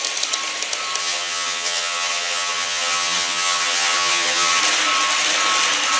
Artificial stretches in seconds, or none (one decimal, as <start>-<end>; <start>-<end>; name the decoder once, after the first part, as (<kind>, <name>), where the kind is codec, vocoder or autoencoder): 1.0-4.6 (vocoder, HiFi-GAN)

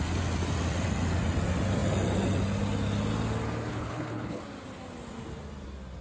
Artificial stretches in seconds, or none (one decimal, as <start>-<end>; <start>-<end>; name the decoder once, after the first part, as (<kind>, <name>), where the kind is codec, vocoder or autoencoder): 3.7-4.4 (codec, HILCodec)

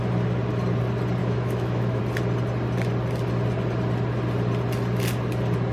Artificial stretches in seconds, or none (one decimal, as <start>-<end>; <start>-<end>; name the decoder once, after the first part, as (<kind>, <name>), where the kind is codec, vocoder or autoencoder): 1.2-2.0 (autoencoder, DAC-VAE)

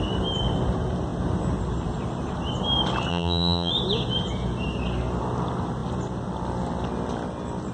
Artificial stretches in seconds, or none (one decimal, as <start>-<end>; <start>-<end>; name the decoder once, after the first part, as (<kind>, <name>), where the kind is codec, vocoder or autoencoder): 3.1-3.7 (vocoder, BigVGAN v2)